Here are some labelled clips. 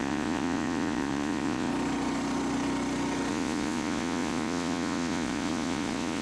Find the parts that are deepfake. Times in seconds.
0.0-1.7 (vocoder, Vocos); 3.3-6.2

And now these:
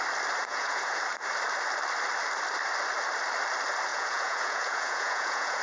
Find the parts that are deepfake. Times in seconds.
0.4-1.0 (vocoder, Vocos); 3.9-5.6